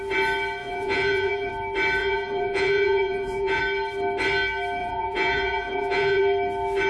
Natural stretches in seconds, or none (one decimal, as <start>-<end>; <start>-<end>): 0.0-0.6; 1.5-2.0; 3.6-4.8; 6.2-6.9